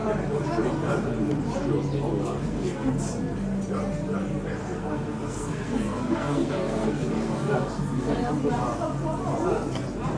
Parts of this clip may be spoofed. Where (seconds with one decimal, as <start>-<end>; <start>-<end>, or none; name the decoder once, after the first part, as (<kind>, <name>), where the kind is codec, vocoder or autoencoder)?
2.2-2.9 (codec, SNAC); 4.6-8.3

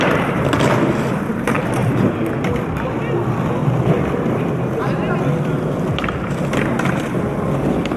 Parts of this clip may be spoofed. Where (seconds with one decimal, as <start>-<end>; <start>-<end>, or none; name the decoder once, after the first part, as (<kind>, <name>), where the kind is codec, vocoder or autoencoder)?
none

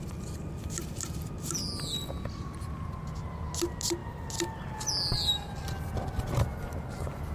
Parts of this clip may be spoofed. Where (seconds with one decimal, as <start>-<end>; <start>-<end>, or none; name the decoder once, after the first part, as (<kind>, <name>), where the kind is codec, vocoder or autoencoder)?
none

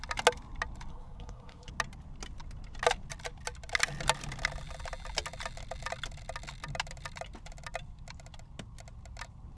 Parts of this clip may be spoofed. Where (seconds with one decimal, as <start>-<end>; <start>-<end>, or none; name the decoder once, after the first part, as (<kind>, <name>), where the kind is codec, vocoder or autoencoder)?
0.9-1.7 (codec, SNAC)